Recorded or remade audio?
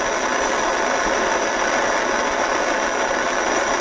recorded